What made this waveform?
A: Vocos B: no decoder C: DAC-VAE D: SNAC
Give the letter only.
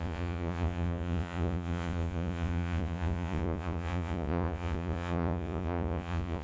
A